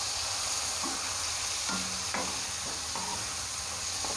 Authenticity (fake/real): real